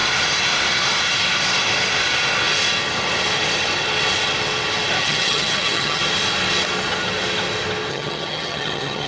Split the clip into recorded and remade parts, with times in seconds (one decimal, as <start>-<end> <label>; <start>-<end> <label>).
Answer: 0.0-5.0 recorded; 5.0-6.0 remade; 6.0-7.9 recorded; 7.9-9.1 remade